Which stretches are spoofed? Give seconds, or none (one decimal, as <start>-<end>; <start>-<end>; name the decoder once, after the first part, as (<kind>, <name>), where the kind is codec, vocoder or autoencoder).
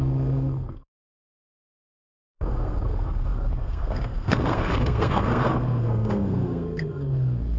0.0-7.6 (codec, SNAC)